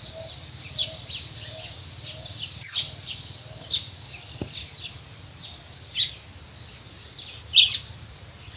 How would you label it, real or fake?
real